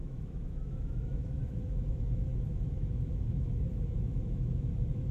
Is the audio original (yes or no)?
no